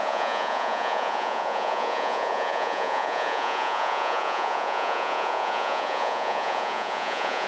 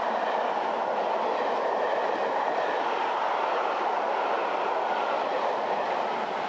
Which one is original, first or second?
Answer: second